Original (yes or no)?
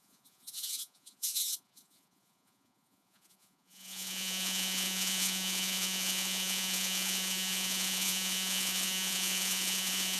no